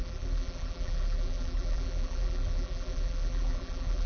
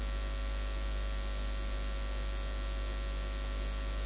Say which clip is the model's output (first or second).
first